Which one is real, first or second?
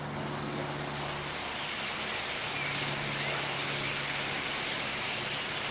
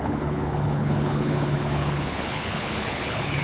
first